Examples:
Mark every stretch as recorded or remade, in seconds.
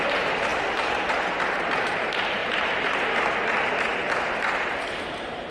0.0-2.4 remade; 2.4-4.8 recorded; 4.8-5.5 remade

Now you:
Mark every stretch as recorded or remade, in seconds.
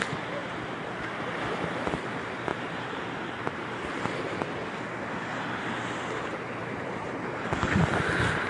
0.0-0.4 recorded; 0.4-1.2 remade; 1.2-2.5 recorded; 2.5-4.5 remade; 4.5-6.6 recorded; 6.6-7.5 remade; 7.5-8.5 recorded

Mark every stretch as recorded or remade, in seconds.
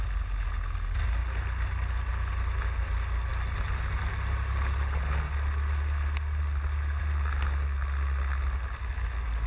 0.0-9.5 recorded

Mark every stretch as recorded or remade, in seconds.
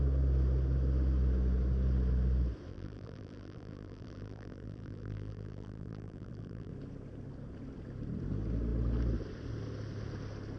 0.0-2.7 recorded; 2.7-6.7 remade; 6.7-10.6 recorded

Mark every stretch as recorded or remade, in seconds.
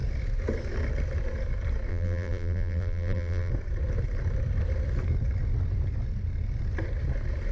0.0-1.9 recorded; 1.9-3.5 remade; 3.5-7.5 recorded